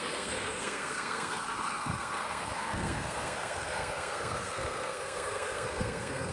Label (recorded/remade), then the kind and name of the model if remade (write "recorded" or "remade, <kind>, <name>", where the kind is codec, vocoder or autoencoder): remade, codec, SNAC